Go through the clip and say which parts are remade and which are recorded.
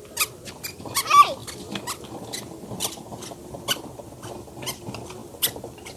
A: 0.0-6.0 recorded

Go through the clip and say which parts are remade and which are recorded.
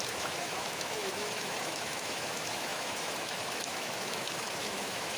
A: 0.0-5.2 remade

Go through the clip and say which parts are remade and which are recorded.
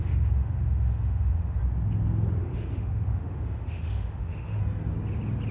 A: 0.0-1.6 remade; 1.6-2.4 recorded; 2.4-4.6 remade; 4.6-5.5 recorded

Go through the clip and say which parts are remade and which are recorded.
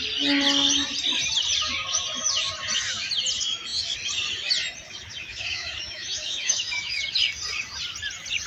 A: 0.0-5.2 recorded; 5.2-7.0 remade; 7.0-8.5 recorded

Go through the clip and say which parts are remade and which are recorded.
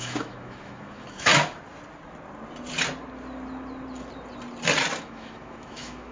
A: 0.0-1.3 remade; 1.3-5.0 recorded; 5.0-6.1 remade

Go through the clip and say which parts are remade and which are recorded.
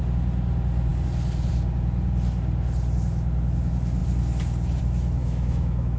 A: 0.0-5.2 recorded; 5.2-6.0 remade